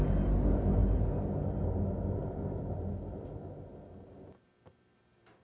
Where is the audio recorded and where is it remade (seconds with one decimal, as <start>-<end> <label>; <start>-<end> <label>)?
0.0-5.4 recorded